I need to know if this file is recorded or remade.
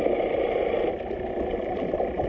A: recorded